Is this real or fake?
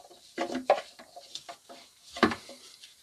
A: fake